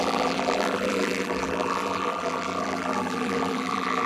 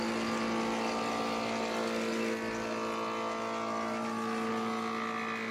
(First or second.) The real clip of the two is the second